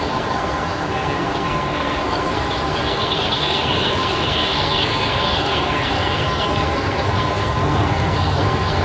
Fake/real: fake